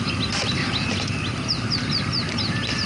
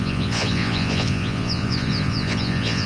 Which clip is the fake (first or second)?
second